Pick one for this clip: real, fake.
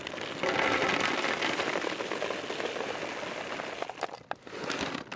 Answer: real